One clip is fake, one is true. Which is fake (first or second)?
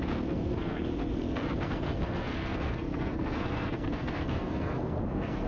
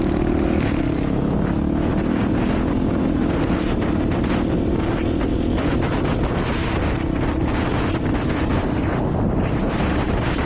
first